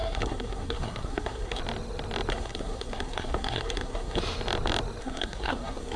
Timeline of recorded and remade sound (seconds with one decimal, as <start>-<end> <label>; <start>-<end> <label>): 0.0-1.6 remade; 1.6-2.3 recorded; 2.3-4.2 remade; 4.2-5.0 recorded; 5.0-6.0 remade